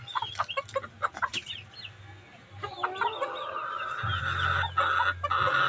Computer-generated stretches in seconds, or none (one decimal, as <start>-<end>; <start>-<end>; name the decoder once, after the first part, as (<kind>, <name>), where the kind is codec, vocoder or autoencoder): none

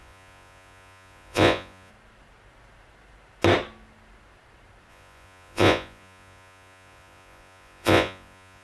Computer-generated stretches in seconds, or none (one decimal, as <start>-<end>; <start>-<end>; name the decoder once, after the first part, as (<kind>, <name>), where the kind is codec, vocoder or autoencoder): 0.0-1.9 (vocoder, Vocos); 4.9-8.6

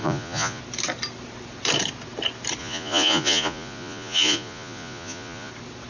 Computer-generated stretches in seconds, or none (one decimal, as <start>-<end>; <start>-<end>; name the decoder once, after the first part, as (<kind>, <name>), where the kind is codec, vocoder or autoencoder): 0.0-0.6 (vocoder, Vocos); 2.6-5.5

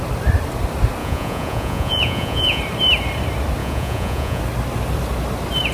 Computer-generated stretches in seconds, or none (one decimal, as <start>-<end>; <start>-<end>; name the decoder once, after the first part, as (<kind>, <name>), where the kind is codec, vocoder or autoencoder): 1.0-2.6 (vocoder, Vocos); 3.6-4.4